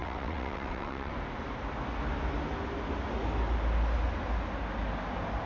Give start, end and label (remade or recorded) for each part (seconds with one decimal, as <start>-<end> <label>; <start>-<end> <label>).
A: 0.0-1.1 remade; 1.1-5.5 recorded